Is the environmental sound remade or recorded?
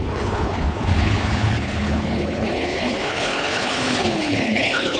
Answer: remade